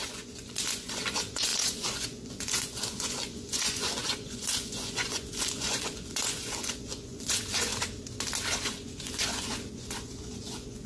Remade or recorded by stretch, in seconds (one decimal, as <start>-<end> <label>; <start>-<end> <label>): 0.0-7.7 remade; 7.7-8.6 recorded; 8.6-10.9 remade